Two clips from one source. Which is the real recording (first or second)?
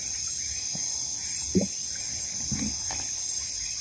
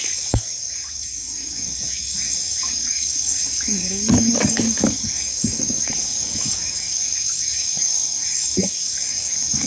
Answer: first